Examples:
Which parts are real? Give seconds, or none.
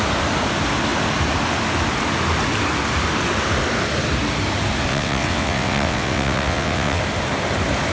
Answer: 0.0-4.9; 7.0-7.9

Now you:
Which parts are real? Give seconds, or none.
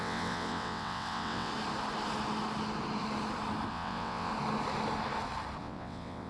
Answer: 1.5-3.7; 4.3-5.6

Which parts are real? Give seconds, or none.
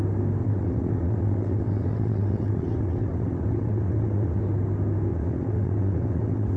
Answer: 0.0-0.4; 4.4-5.1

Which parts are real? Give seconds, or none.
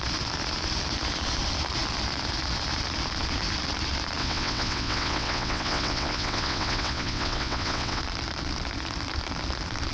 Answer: 0.0-4.2; 8.0-9.9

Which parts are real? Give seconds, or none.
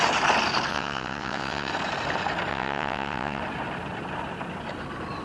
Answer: 0.0-0.7; 1.7-2.5; 3.4-5.2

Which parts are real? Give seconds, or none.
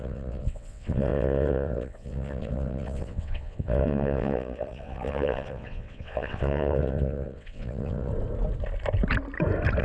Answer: 8.1-9.8